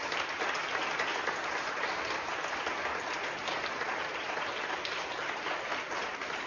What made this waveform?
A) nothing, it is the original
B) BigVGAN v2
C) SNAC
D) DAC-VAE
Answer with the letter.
A